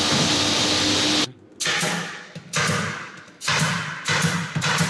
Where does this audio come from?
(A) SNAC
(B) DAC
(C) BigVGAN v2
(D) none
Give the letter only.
D